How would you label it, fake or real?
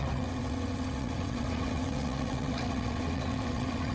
fake